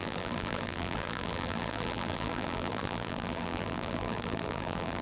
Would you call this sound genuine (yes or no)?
no